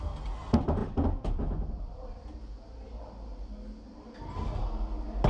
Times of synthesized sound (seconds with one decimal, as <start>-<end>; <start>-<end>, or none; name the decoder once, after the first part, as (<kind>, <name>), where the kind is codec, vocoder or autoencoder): none